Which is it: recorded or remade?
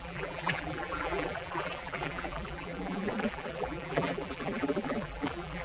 remade